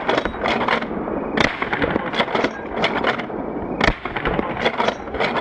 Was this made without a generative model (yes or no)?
yes